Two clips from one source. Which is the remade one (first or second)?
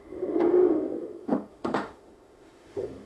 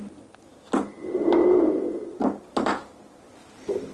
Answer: first